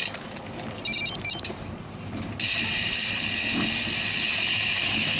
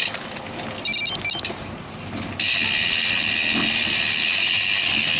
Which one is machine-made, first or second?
first